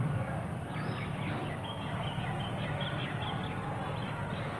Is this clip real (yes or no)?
yes